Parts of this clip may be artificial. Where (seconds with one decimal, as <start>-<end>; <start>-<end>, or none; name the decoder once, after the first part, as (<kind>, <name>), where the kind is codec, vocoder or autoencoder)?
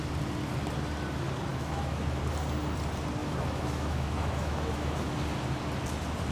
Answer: 1.5-2.2 (autoencoder, DAC-VAE); 3.2-5.1